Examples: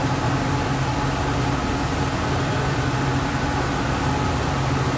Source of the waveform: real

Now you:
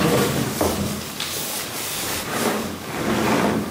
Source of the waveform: fake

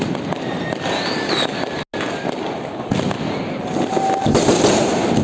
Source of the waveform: real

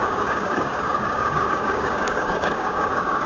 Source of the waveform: fake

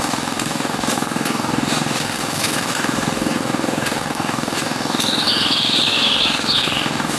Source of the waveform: fake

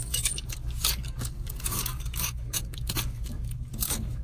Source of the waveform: fake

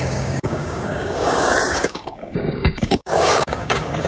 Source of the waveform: fake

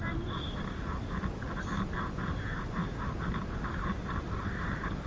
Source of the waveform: real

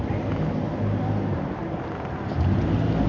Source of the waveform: real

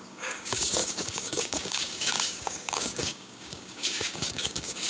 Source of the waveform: fake